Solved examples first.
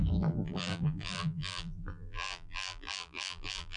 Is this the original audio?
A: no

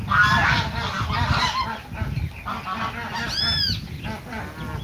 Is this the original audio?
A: yes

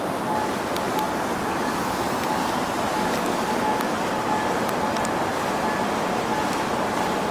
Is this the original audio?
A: yes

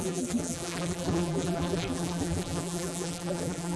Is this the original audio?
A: no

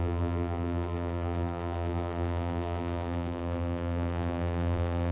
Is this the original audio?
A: no